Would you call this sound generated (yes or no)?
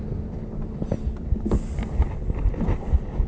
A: no